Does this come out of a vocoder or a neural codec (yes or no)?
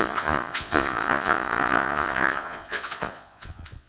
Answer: yes